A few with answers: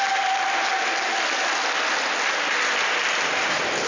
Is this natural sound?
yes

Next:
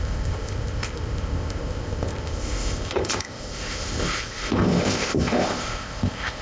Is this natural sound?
no